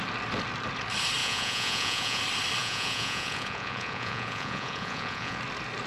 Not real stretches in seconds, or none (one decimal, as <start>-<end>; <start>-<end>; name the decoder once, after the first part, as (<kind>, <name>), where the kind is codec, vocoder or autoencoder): 1.2-2.2 (vocoder, Vocos); 2.6-5.4